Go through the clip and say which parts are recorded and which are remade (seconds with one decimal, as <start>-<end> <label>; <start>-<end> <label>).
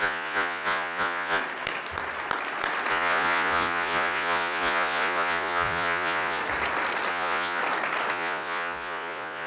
0.0-1.4 remade; 1.4-2.9 recorded; 2.9-6.4 remade; 6.4-7.1 recorded; 7.1-7.6 remade; 7.6-8.1 recorded; 8.1-9.5 remade